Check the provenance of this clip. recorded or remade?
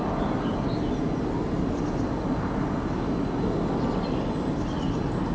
recorded